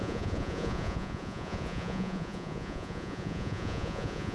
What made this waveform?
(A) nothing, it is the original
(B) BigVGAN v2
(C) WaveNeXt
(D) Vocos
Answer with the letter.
D